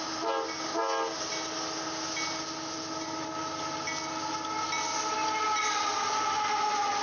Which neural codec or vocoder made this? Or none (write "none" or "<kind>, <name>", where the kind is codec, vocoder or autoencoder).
none